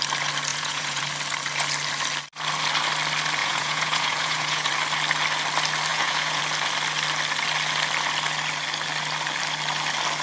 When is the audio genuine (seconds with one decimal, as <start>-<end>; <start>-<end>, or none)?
0.0-0.5; 1.0-3.4; 4.7-5.9; 6.4-10.2